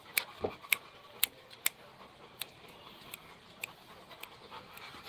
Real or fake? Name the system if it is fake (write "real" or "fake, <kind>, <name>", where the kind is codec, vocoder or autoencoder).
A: real